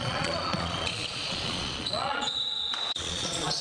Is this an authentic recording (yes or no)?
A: no